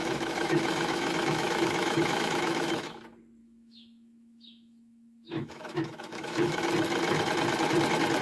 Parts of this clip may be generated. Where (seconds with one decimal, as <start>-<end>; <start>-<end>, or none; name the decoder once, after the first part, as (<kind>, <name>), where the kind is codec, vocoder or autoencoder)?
0.0-3.0 (autoencoder, DAC-VAE); 3.4-6.6